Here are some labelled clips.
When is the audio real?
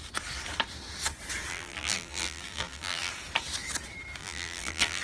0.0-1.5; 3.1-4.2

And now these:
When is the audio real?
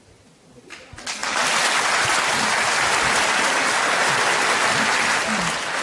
0.0-5.8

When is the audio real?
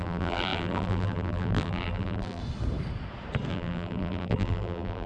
2.4-3.5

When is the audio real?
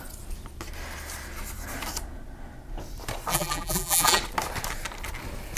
0.0-3.3; 4.2-5.6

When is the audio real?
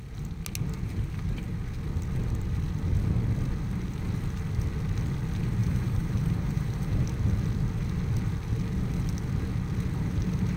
0.0-5.6; 7.0-10.6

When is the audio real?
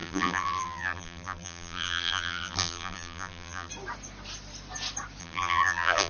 3.7-5.2